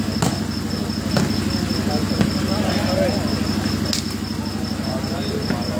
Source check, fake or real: real